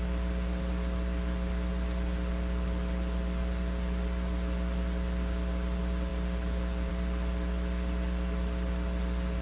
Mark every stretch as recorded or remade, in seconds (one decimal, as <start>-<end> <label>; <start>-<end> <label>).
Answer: 0.0-9.4 recorded